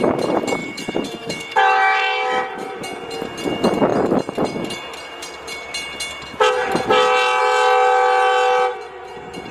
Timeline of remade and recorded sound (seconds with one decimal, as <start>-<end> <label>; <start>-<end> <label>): 0.0-0.6 recorded; 0.6-2.8 remade; 2.8-9.5 recorded